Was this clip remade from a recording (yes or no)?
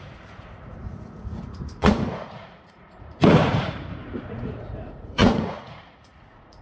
yes